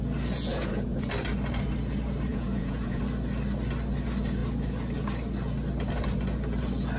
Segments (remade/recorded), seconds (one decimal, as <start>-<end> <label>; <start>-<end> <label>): 0.0-0.5 recorded; 0.5-1.1 remade; 1.1-2.3 recorded; 2.3-3.0 remade; 3.0-7.0 recorded

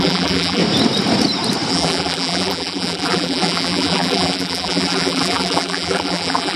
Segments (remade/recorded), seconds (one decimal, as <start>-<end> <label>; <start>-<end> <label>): 0.0-0.6 remade; 0.6-1.7 recorded; 1.7-6.6 remade

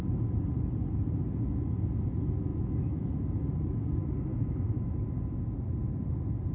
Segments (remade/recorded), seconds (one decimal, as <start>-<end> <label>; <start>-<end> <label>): 0.0-2.5 recorded; 2.5-3.1 remade; 3.1-4.3 recorded; 4.3-4.9 remade; 4.9-6.5 recorded

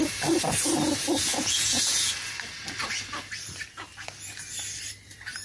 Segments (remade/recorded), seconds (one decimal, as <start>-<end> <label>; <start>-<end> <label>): 0.0-1.3 recorded; 1.3-2.1 remade; 2.1-5.4 recorded

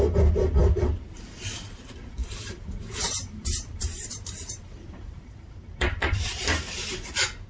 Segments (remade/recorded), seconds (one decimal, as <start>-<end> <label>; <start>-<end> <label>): 0.0-2.2 recorded; 2.2-6.6 remade; 6.6-7.5 recorded

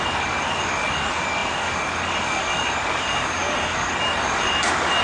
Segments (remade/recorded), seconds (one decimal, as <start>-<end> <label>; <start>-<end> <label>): 0.0-5.0 remade

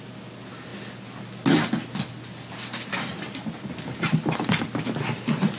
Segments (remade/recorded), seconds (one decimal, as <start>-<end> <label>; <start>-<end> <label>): 0.0-5.6 recorded

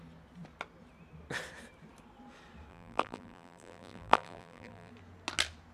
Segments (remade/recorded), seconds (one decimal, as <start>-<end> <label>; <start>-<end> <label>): 0.0-2.7 recorded; 2.7-4.9 remade; 4.9-5.7 recorded